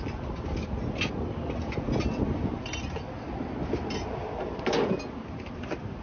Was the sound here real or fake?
real